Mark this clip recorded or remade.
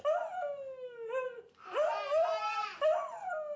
recorded